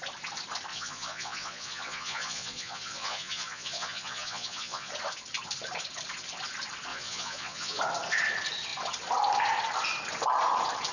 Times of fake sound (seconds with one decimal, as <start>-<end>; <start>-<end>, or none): 0.7-4.9; 6.9-7.8